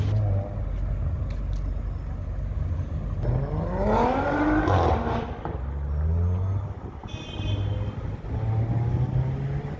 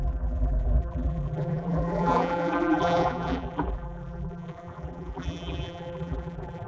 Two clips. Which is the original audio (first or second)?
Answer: first